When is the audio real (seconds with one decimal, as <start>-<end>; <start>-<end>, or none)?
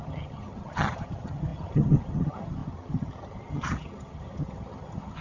none